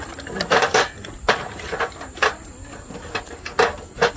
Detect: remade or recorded recorded